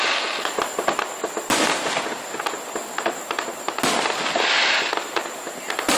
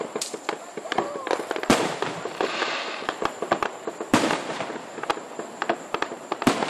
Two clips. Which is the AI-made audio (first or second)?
second